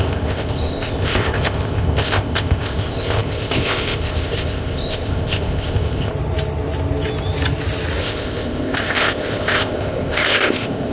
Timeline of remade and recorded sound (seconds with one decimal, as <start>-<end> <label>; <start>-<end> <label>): 0.0-6.1 remade; 6.1-8.0 recorded; 8.0-10.9 remade